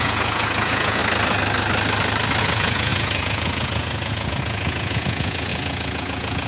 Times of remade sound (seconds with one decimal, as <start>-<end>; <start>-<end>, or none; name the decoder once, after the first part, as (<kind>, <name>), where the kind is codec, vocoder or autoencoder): 0.0-1.0 (vocoder, Vocos); 2.4-6.5